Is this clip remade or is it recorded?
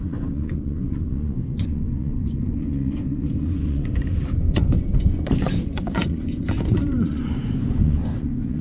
remade